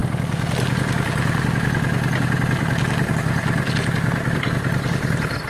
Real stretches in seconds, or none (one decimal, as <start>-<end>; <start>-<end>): 0.0-5.5